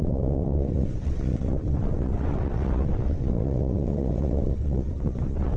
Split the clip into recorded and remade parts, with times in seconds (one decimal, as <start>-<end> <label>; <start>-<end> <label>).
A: 0.0-5.6 remade